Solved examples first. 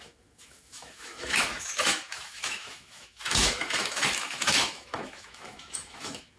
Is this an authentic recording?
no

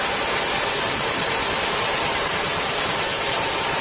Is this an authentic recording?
yes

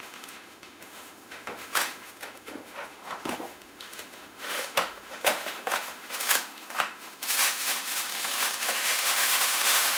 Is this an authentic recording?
no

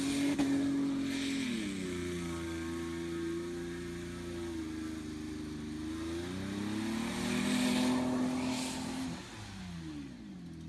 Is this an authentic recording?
yes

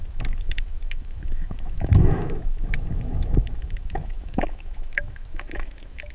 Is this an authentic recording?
no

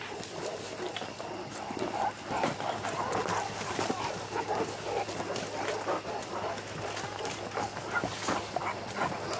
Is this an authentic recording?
yes